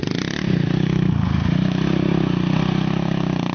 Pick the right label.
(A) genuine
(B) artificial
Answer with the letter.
A